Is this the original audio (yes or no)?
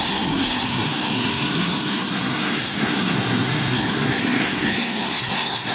no